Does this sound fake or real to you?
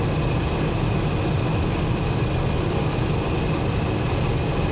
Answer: real